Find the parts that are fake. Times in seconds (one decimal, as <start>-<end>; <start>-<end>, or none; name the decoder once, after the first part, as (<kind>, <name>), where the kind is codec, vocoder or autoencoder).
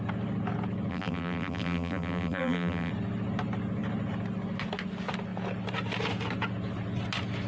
0.9-2.9 (vocoder, BigVGAN v2)